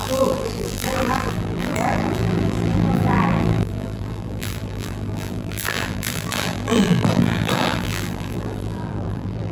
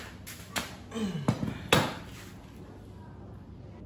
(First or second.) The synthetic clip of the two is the first